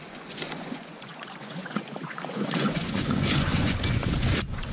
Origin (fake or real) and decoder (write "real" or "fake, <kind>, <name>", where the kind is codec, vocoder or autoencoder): fake, vocoder, Vocos